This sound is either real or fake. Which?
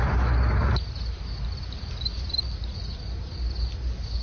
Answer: real